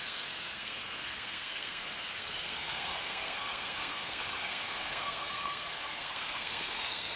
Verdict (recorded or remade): remade